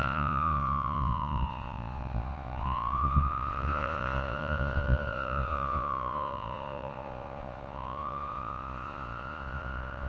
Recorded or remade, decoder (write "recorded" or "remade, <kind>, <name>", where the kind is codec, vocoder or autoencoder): remade, vocoder, Vocos